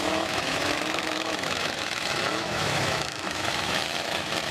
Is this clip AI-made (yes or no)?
yes